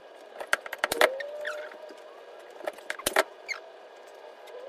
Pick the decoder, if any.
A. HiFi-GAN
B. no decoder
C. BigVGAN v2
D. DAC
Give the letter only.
C